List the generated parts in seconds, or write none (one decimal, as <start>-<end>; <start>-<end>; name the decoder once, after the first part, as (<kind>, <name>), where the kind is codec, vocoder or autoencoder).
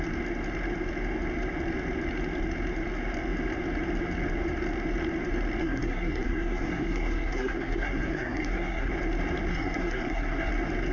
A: 5.6-8.9 (codec, SNAC); 9.5-10.5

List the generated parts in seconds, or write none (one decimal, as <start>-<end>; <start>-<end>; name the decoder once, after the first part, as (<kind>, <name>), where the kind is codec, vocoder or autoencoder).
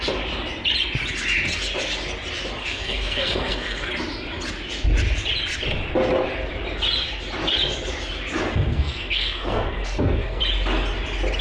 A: 2.6-3.9 (codec, SNAC); 8.5-10.4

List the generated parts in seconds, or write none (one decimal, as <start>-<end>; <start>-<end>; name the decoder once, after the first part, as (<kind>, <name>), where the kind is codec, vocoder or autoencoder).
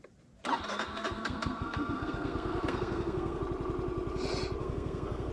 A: 0.7-3.4 (codec, SNAC); 4.6-5.3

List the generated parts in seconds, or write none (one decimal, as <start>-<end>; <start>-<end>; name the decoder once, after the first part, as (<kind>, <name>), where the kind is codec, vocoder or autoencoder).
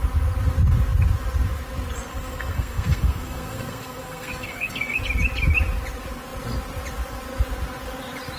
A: 2.1-5.0 (codec, SNAC)